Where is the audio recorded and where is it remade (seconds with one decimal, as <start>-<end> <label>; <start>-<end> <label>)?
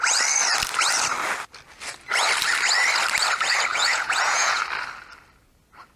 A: 0.0-3.7 recorded; 3.7-4.6 remade; 4.6-6.0 recorded